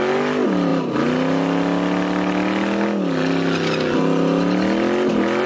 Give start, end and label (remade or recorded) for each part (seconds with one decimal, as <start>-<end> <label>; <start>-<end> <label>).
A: 0.0-5.5 recorded